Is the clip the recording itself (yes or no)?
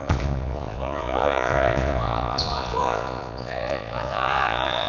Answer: no